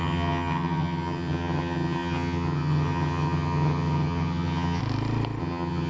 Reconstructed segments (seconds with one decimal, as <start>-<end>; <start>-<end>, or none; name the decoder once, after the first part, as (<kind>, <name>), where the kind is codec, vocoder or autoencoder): 0.0-4.8 (vocoder, HiFi-GAN); 5.4-5.9